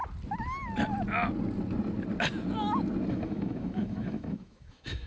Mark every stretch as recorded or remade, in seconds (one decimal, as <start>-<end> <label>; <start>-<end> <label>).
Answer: 0.0-3.1 recorded; 3.1-5.1 remade